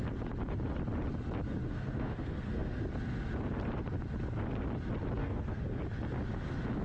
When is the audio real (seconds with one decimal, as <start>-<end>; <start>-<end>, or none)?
0.0-1.6; 2.8-5.2; 5.8-6.8